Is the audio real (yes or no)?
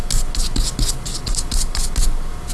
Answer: yes